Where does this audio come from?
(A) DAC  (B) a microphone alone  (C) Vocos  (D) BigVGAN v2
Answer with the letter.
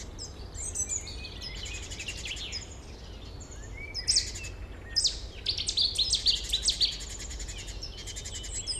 B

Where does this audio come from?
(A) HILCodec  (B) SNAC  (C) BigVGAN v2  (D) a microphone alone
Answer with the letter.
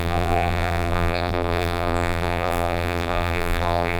C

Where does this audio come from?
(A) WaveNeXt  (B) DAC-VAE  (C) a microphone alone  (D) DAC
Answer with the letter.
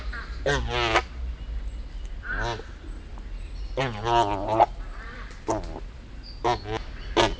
C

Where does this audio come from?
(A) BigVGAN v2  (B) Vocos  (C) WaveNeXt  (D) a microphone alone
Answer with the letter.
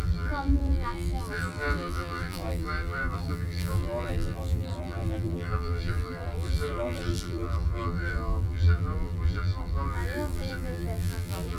A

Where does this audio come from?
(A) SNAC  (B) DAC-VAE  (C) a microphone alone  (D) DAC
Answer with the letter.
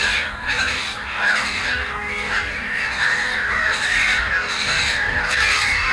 D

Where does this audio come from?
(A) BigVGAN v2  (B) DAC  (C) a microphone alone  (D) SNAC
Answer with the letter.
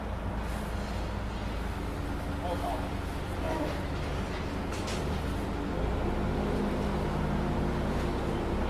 C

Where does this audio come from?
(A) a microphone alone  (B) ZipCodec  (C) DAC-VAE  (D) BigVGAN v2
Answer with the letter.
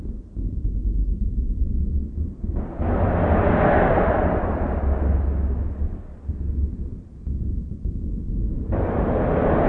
A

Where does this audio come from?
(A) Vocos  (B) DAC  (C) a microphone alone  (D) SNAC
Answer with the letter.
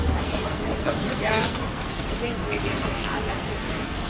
D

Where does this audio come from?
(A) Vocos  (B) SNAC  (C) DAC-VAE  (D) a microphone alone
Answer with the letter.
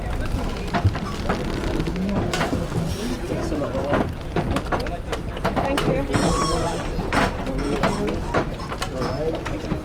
D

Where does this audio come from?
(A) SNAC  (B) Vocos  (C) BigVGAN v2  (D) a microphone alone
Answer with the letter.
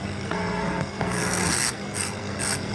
A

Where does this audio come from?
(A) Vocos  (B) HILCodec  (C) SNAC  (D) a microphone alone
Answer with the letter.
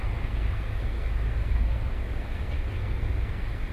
C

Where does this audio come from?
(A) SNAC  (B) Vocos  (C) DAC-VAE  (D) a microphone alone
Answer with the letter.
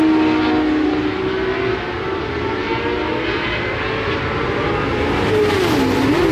D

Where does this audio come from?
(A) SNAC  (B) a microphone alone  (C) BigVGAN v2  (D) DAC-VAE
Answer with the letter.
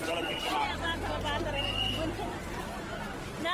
B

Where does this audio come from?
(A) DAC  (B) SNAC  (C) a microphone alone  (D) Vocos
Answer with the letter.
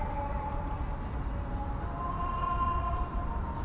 C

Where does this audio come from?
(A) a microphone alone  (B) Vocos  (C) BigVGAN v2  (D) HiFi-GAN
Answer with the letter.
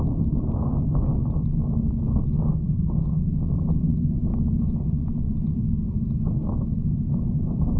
A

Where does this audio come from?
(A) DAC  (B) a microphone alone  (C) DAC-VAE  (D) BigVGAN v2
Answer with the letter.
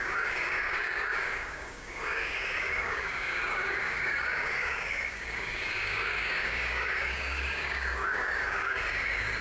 A